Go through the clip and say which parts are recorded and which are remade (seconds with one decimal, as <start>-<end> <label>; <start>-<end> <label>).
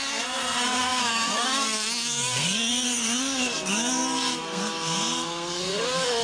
0.0-6.2 remade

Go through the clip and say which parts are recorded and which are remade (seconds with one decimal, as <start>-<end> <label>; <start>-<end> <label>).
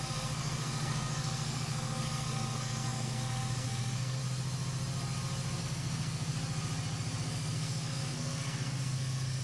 0.0-4.2 remade; 4.2-5.6 recorded; 5.6-6.3 remade; 6.3-7.2 recorded; 7.2-9.4 remade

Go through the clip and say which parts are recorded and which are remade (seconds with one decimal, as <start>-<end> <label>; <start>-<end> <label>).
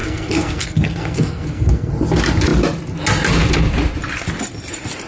0.0-1.9 remade; 1.9-5.1 recorded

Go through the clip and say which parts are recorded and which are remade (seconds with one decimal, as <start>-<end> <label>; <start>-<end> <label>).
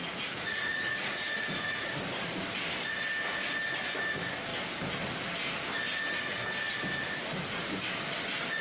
0.0-1.9 remade; 1.9-8.6 recorded